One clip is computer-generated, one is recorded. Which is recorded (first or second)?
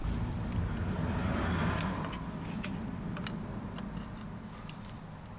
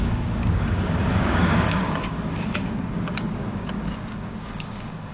first